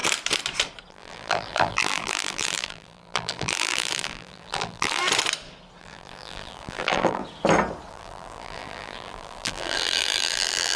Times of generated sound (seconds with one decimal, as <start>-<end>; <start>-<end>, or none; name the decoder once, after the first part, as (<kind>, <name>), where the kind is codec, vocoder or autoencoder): 0.9-5.0 (vocoder, BigVGAN v2); 5.8-7.2; 7.9-10.8